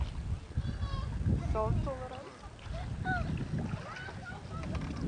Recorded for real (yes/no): yes